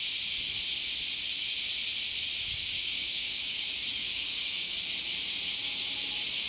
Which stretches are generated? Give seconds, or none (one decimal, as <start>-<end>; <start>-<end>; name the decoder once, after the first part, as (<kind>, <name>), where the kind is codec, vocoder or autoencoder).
2.5-4.8 (codec, DAC)